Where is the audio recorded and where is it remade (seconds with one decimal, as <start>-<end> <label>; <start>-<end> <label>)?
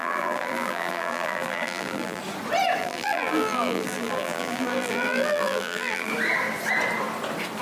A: 0.0-2.2 remade; 2.2-2.8 recorded; 2.8-6.1 remade; 6.1-7.6 recorded